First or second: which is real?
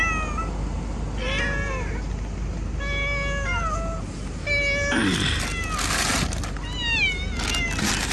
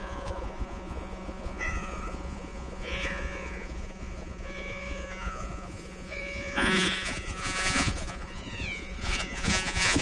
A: first